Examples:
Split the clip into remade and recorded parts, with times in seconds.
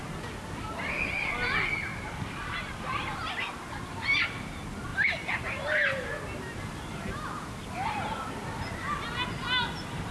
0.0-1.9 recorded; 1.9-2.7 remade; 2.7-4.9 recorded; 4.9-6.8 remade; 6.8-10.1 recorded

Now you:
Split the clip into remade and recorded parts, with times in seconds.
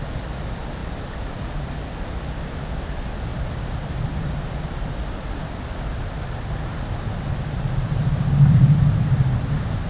0.0-0.8 recorded; 0.8-1.7 remade; 1.7-3.3 recorded; 3.3-7.9 remade; 7.9-9.9 recorded